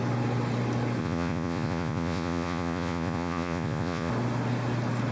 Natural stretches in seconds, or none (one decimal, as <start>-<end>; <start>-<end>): 0.0-1.0; 4.1-5.1